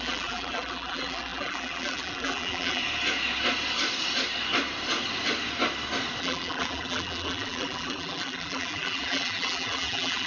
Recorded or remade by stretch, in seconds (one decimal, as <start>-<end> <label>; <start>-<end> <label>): 0.0-2.8 remade; 2.8-6.2 recorded; 6.2-10.3 remade